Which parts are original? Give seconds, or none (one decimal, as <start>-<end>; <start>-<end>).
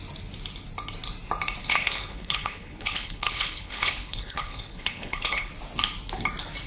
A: 0.0-1.6; 5.5-6.7